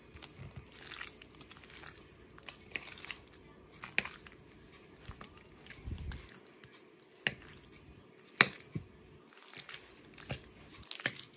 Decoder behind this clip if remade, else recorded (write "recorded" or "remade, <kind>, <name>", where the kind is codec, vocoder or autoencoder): recorded